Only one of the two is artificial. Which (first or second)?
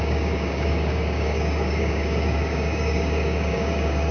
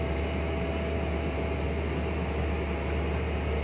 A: first